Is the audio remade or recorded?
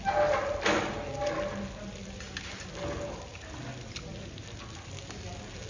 recorded